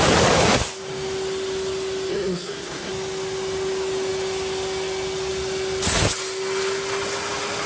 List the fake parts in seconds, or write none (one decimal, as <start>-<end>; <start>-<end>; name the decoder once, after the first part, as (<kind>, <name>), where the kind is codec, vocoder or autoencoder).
2.1-2.9 (codec, SNAC)